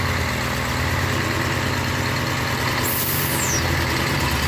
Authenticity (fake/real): real